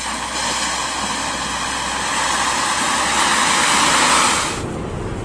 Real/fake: real